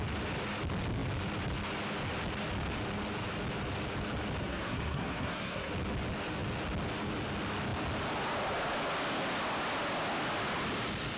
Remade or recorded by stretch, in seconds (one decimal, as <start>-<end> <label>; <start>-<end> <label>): 0.0-4.4 recorded; 4.4-5.7 remade; 5.7-11.2 recorded

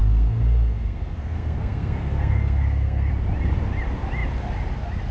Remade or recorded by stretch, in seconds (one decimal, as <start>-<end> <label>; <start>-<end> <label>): 0.0-3.1 remade; 3.1-5.1 recorded